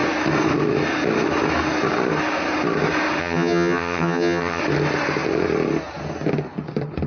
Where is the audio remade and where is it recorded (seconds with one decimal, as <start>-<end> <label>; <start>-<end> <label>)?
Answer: 0.0-3.2 recorded; 3.2-4.6 remade; 4.6-7.1 recorded